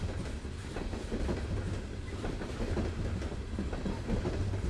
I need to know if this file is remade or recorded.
recorded